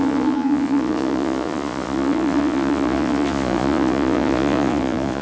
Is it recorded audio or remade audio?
remade